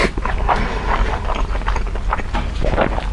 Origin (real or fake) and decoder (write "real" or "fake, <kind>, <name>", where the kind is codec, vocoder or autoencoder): real